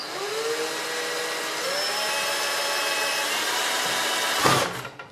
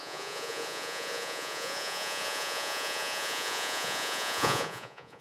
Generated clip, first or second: second